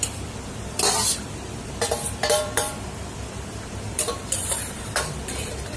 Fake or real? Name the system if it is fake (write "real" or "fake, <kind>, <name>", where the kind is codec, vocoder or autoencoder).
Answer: fake, vocoder, BigVGAN v2